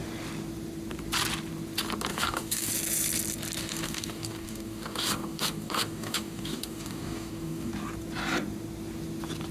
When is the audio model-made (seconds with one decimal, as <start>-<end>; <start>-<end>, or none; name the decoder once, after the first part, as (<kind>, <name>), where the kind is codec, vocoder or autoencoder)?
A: 2.1-2.7 (codec, DAC); 3.6-7.7